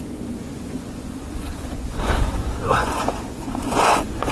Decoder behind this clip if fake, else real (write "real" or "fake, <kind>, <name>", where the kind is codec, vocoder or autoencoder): fake, vocoder, Vocos